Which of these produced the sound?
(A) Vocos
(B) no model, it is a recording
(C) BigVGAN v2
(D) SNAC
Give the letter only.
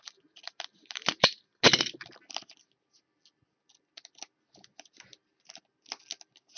B